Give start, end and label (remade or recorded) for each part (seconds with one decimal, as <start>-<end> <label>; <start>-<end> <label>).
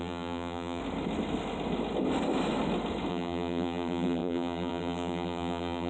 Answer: 0.0-0.8 remade; 0.8-3.1 recorded; 3.1-5.9 remade